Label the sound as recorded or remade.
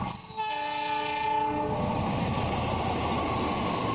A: recorded